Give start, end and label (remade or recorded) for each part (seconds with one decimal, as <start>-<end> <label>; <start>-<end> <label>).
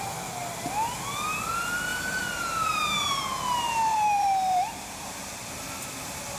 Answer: 0.0-1.9 recorded; 1.9-3.2 remade; 3.2-3.9 recorded; 3.9-5.1 remade; 5.1-6.4 recorded